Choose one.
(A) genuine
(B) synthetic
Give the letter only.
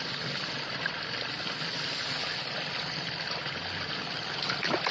A